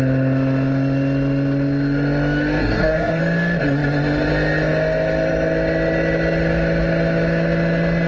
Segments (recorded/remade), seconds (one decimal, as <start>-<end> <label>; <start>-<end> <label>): 0.0-2.6 recorded; 2.6-3.2 remade; 3.2-8.1 recorded